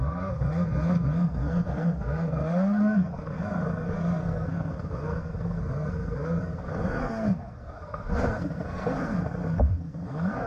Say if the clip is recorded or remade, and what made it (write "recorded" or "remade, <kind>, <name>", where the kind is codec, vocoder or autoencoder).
remade, codec, SNAC